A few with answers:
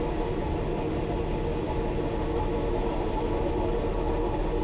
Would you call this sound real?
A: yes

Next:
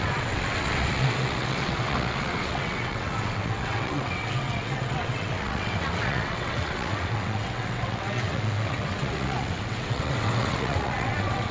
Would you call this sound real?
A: no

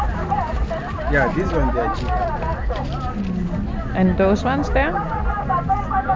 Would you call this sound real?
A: yes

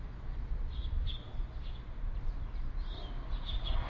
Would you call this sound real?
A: yes